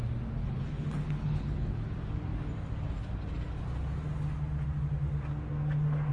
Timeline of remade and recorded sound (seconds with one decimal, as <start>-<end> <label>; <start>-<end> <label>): 0.0-0.4 recorded; 0.4-1.8 remade; 1.8-6.1 recorded